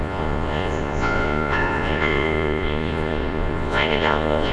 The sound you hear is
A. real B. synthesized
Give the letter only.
B